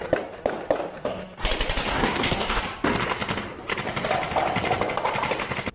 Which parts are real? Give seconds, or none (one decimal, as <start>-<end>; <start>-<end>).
0.0-1.9; 2.6-5.7